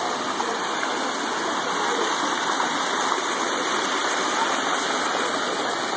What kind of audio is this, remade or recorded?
recorded